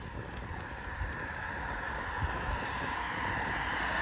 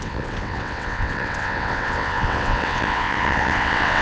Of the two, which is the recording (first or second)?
first